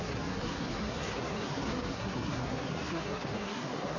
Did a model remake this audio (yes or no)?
yes